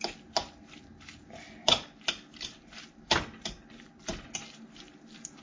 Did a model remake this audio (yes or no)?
no